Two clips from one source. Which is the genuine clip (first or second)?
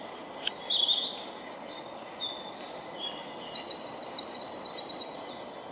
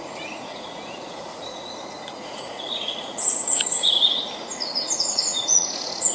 first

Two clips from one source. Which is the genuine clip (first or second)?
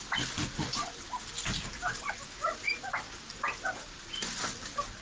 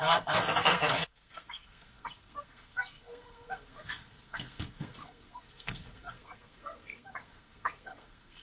first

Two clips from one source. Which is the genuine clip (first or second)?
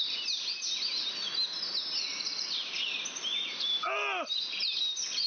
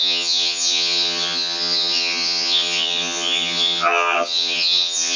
first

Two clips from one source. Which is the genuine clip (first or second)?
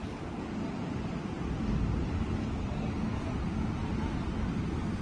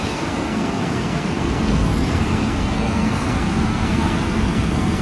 first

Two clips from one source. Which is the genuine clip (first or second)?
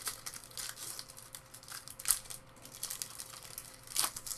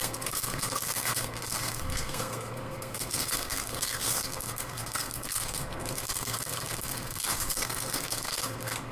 first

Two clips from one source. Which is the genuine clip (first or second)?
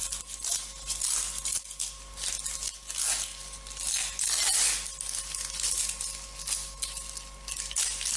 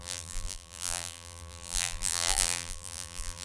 first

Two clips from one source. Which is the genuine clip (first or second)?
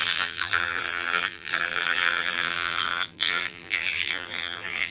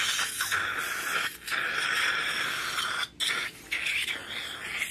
second